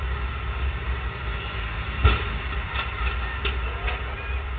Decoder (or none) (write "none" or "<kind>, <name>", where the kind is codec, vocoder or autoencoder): none